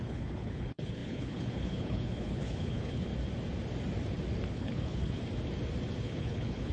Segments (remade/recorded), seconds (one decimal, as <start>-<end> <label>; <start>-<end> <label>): 0.0-3.1 remade; 3.1-4.5 recorded; 4.5-5.2 remade; 5.2-6.0 recorded; 6.0-6.7 remade